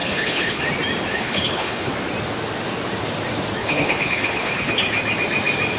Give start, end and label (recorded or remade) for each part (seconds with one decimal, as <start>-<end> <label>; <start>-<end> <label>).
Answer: 0.0-0.6 remade; 0.6-1.1 recorded; 1.1-1.9 remade; 1.9-3.6 recorded; 3.6-4.7 remade; 4.7-5.8 recorded